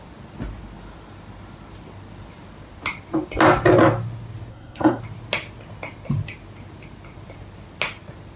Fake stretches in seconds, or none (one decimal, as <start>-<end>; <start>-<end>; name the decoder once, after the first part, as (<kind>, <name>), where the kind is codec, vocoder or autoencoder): 4.5-5.0 (codec, SNAC)